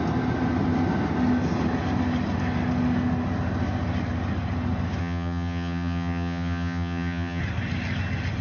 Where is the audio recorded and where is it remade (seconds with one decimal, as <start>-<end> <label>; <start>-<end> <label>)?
0.0-5.0 recorded; 5.0-7.4 remade; 7.4-8.4 recorded